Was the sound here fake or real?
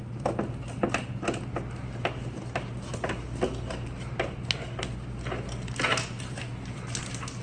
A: real